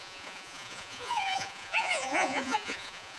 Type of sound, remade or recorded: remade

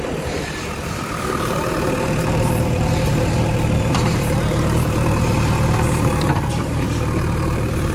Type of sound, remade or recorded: remade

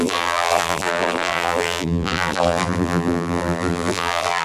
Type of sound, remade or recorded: remade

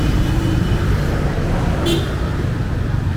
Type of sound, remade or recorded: recorded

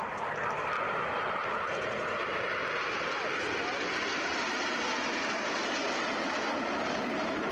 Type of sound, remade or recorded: recorded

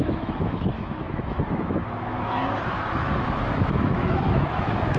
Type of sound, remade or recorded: remade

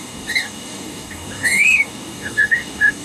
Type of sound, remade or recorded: remade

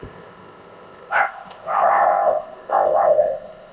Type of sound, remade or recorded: remade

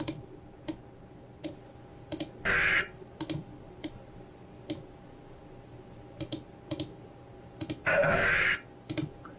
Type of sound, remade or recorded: recorded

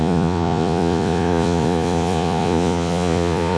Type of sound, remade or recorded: remade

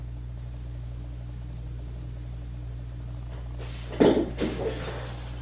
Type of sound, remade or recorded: recorded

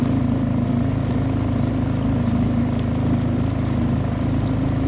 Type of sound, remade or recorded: recorded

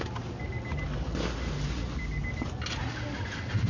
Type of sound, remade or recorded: recorded